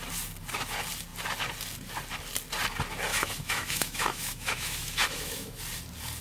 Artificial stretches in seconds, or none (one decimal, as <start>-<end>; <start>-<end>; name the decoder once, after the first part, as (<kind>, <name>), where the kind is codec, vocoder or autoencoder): 3.1-5.6 (autoencoder, DAC-VAE)